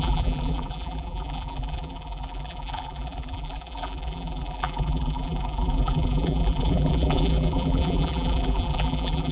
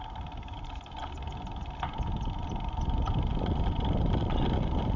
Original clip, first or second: second